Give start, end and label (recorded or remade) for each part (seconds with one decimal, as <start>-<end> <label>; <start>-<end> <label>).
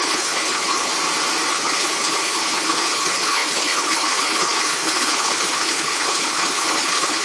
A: 0.0-0.9 remade; 0.9-1.5 recorded; 1.5-7.2 remade